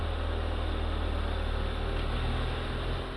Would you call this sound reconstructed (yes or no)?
no